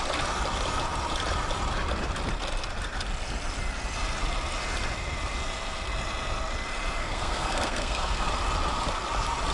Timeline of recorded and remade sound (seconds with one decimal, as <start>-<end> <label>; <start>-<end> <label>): 0.0-7.0 recorded; 7.0-8.3 remade; 8.3-9.5 recorded

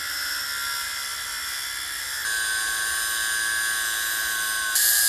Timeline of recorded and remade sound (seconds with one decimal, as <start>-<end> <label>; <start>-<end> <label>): 0.0-5.1 recorded

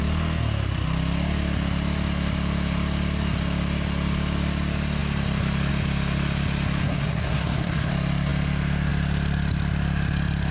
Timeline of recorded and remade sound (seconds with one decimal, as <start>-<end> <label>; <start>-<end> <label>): 0.0-6.8 recorded; 6.8-7.9 remade; 7.9-10.5 recorded

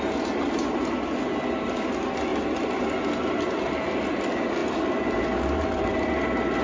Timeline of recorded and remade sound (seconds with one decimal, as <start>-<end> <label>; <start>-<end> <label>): 0.0-2.3 recorded; 2.3-3.7 remade; 3.7-4.6 recorded; 4.6-6.1 remade; 6.1-6.6 recorded

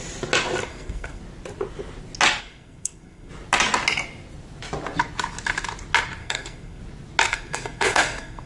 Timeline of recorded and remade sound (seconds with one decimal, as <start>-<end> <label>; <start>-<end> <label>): 0.0-0.7 recorded; 0.7-1.2 remade; 1.2-2.4 recorded; 2.4-3.3 remade; 3.3-6.2 recorded; 6.2-6.8 remade; 6.8-7.3 recorded; 7.3-8.5 remade

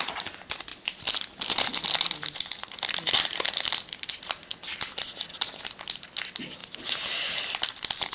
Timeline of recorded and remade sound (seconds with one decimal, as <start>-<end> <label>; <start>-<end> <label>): 0.0-8.1 recorded

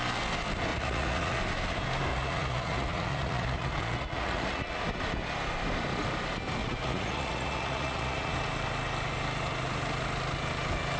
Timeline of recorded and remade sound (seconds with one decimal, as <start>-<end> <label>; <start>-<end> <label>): 0.0-0.7 recorded; 0.7-1.4 remade; 1.4-2.1 recorded; 2.1-4.8 remade; 4.8-6.6 recorded; 6.6-8.3 remade; 8.3-11.0 recorded